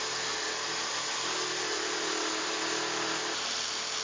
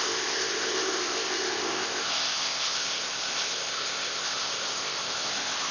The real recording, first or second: first